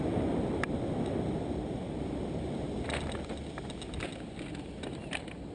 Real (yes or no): yes